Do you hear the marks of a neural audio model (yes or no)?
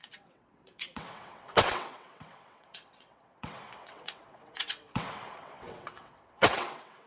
yes